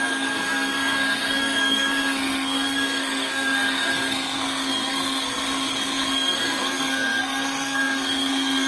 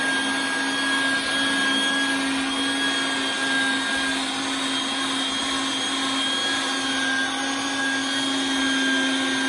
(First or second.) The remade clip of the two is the first